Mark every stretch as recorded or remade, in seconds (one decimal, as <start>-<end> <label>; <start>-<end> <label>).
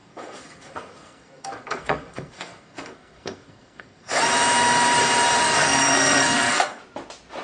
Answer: 0.0-4.2 remade; 4.2-5.4 recorded; 5.4-6.8 remade; 6.8-7.4 recorded